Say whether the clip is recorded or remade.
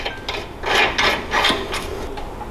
recorded